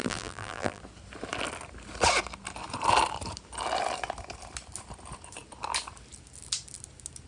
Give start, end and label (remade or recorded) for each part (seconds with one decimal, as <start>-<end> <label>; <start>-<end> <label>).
0.0-0.8 remade; 0.8-7.3 recorded